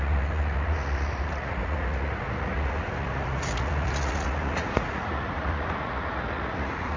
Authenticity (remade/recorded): remade